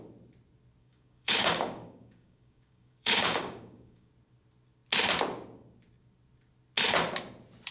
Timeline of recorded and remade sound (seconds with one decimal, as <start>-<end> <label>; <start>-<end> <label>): 0.0-0.8 recorded; 0.8-4.1 remade; 4.1-7.7 recorded